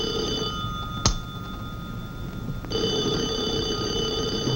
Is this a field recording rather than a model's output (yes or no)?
yes